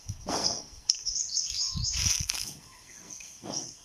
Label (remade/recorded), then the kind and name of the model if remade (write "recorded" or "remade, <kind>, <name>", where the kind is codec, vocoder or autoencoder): remade, codec, SNAC